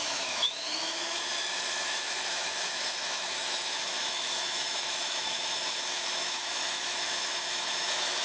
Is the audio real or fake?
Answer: fake